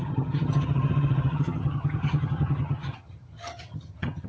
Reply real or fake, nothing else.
fake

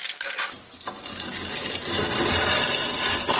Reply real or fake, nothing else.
real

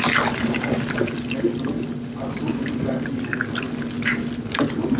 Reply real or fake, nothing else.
real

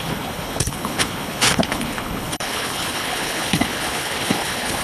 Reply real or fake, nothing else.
fake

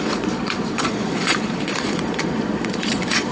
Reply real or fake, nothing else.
fake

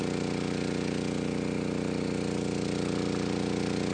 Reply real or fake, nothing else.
real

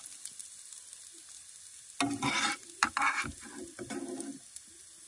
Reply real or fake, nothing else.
real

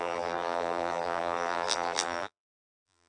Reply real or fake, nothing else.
fake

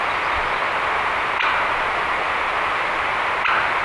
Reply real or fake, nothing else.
real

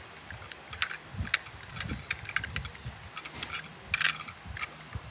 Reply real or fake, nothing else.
real